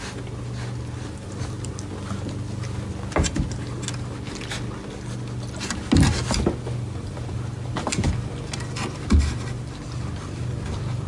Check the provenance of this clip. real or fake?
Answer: real